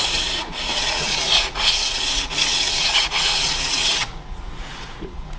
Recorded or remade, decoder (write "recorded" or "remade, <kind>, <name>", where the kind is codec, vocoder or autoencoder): remade, vocoder, Vocos